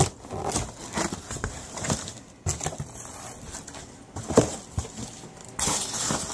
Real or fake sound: real